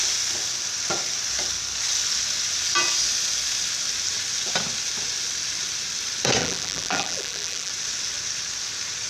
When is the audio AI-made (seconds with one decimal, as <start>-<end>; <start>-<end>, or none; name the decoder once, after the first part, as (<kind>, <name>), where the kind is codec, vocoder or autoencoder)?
6.4-7.7 (vocoder, BigVGAN v2)